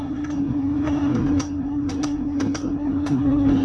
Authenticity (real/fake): fake